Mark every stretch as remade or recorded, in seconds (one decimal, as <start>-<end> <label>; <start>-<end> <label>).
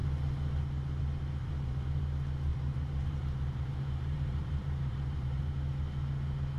0.0-1.4 recorded; 1.4-2.0 remade; 2.0-2.5 recorded; 2.5-5.4 remade; 5.4-6.6 recorded